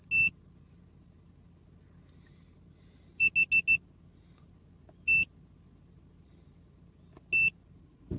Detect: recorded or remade recorded